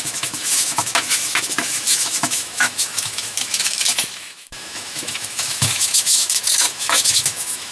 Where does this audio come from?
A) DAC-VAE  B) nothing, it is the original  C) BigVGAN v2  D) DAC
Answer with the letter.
A